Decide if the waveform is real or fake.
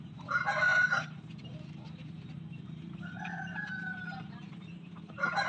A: fake